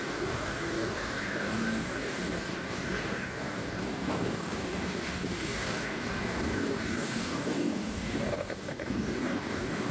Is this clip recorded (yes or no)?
no